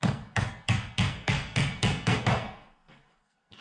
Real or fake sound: fake